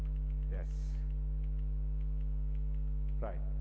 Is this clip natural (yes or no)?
yes